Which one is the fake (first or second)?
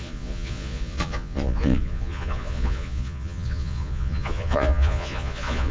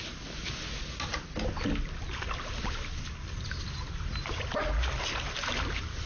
first